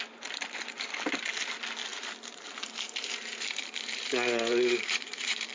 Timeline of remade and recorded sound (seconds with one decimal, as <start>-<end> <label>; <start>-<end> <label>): 0.0-1.9 recorded; 1.9-5.5 remade